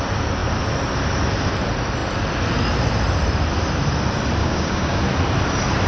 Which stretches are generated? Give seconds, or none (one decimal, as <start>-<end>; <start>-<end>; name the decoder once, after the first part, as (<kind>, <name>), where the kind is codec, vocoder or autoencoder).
4.4-5.0 (codec, DAC)

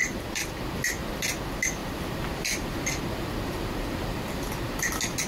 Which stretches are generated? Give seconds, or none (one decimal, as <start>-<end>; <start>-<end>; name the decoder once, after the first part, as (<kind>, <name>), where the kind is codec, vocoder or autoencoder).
none

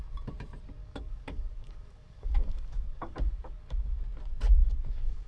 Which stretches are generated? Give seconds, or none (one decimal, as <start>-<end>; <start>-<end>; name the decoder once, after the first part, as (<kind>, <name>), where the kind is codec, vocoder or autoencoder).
0.8-4.0 (codec, DAC); 4.6-5.3

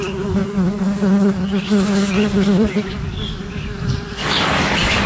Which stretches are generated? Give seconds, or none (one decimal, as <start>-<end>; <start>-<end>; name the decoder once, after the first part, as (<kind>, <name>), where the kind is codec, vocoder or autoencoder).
0.0-5.1 (codec, DAC)